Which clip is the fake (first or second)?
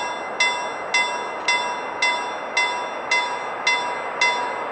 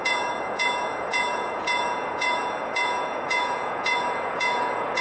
second